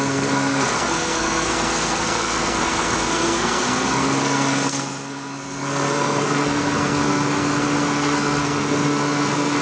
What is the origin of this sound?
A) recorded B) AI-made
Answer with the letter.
B